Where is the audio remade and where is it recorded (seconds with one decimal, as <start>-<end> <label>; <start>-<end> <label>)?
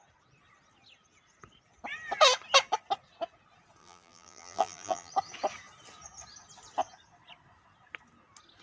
0.0-3.8 recorded; 3.8-5.1 remade; 5.1-8.6 recorded